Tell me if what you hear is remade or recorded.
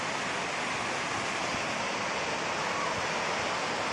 recorded